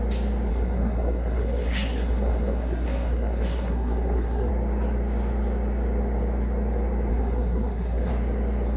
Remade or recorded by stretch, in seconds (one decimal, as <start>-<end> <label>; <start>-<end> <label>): 0.0-0.5 recorded; 0.5-4.5 remade; 4.5-7.1 recorded; 7.1-8.1 remade; 8.1-8.8 recorded